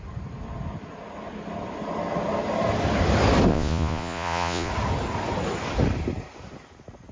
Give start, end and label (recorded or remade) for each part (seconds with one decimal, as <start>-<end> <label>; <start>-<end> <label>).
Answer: 0.0-3.5 recorded; 3.5-4.7 remade; 4.7-7.1 recorded